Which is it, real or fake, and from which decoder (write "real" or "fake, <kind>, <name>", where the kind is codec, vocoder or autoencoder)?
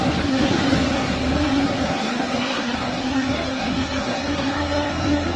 fake, codec, SNAC